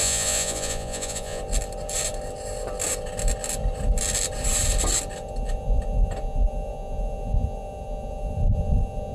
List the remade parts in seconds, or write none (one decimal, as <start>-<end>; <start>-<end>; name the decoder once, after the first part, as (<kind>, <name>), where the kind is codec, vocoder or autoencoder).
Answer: 0.0-1.4 (vocoder, Vocos)